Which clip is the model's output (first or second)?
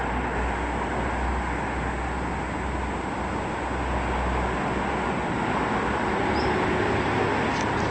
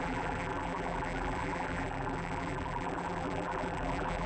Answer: second